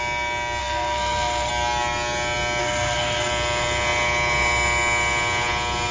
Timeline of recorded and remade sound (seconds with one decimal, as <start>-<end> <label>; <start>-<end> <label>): 0.0-0.6 recorded; 0.6-1.5 remade; 1.5-2.6 recorded; 2.6-3.3 remade; 3.3-5.9 recorded